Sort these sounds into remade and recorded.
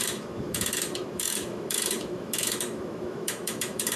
remade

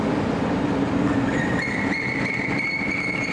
remade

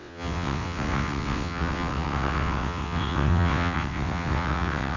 remade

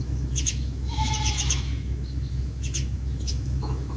remade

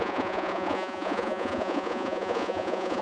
remade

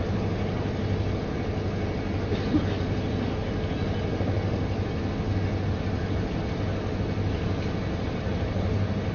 recorded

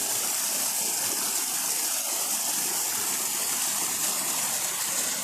recorded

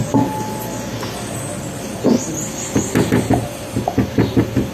recorded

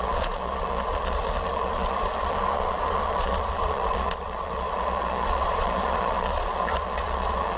remade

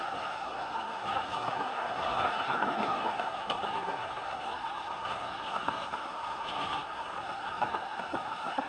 remade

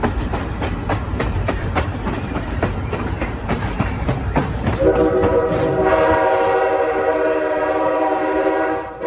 remade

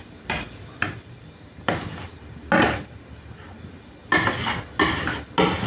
recorded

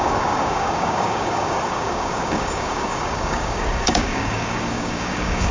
remade